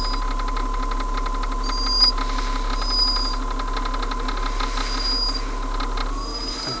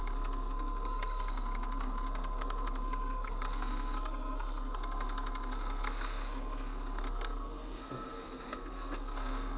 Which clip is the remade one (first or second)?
second